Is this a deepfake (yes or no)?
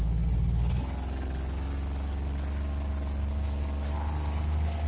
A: no